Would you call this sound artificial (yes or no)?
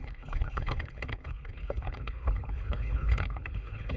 yes